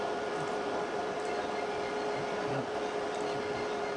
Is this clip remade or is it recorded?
recorded